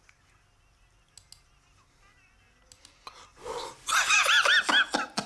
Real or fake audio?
real